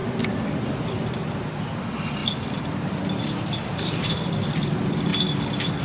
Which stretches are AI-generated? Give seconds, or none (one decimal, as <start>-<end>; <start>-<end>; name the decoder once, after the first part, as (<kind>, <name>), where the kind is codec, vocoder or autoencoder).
0.7-5.1 (vocoder, BigVGAN v2)